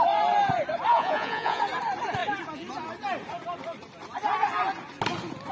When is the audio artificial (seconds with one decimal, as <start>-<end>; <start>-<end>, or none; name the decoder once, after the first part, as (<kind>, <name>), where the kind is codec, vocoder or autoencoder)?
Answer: 0.9-1.6 (vocoder, Vocos)